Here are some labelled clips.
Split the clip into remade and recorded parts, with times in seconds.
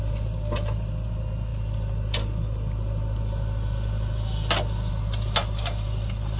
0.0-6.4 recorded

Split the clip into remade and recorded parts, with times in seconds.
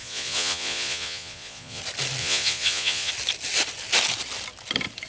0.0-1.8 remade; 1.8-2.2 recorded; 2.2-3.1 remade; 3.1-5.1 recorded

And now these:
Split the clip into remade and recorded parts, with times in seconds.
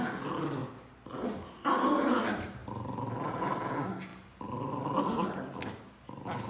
0.0-6.5 recorded